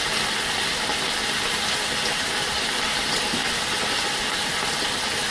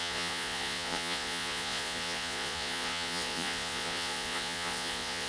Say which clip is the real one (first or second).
first